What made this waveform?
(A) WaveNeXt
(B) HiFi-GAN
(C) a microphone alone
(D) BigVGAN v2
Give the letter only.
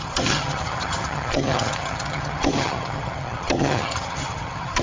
B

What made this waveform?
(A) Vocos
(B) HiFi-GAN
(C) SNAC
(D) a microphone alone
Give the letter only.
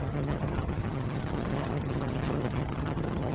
B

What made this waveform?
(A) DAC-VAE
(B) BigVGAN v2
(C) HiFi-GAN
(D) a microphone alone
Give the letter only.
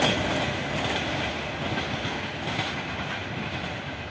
D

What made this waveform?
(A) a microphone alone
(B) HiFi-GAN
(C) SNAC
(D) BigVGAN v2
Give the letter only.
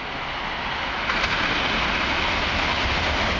A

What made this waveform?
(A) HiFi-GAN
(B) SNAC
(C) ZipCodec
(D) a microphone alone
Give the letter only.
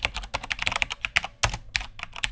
D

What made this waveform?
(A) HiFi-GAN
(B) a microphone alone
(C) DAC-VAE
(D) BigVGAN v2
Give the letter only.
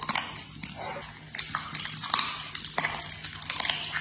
B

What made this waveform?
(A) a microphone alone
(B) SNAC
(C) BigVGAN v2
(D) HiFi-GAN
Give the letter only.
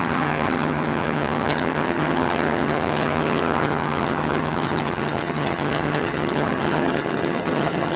D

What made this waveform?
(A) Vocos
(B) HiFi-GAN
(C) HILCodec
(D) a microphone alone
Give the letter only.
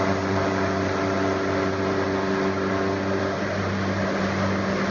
D